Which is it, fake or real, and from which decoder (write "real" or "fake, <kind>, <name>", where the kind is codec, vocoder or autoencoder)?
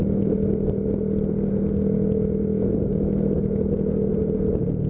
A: real